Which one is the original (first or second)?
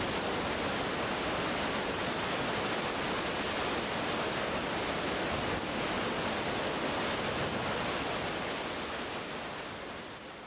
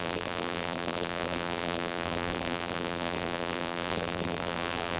first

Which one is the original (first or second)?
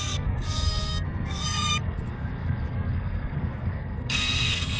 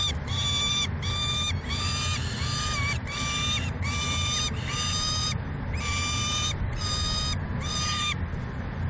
second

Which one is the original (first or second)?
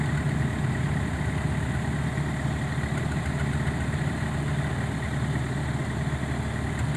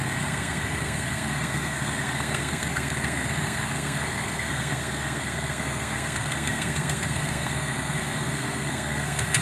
first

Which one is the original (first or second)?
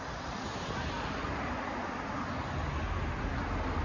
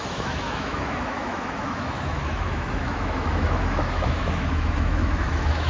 first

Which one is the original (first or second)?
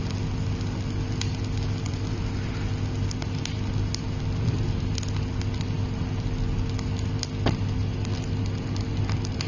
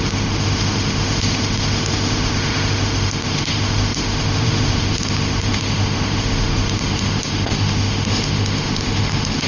first